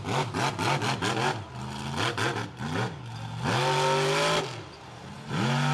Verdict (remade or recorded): recorded